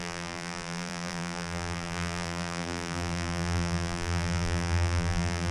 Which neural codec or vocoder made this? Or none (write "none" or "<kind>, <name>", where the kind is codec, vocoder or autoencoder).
vocoder, BigVGAN v2